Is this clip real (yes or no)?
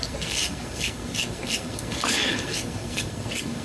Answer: no